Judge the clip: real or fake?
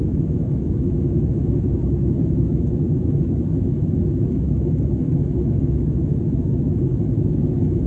fake